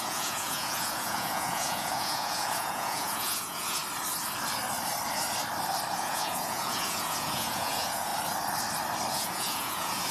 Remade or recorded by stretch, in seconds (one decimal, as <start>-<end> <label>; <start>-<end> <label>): 0.0-3.8 remade; 3.8-5.9 recorded; 5.9-8.1 remade; 8.1-9.1 recorded; 9.1-10.1 remade